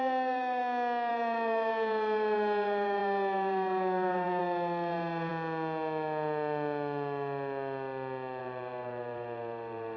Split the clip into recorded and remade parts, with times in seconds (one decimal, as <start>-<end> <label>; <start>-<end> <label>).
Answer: 0.0-0.6 remade; 0.6-1.1 recorded; 1.1-5.3 remade; 5.3-8.4 recorded; 8.4-10.0 remade